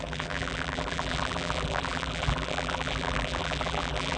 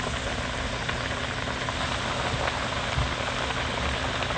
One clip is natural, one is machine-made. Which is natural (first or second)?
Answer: second